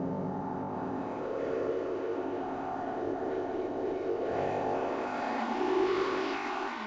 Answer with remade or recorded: remade